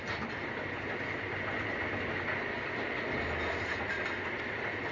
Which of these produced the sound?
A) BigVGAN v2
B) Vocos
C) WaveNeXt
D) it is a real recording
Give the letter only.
D